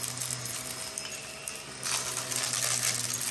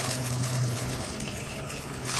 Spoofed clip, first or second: second